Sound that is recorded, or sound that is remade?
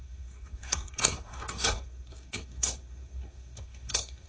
remade